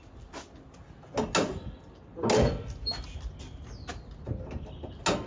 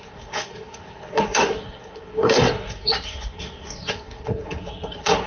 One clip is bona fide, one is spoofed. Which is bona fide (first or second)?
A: first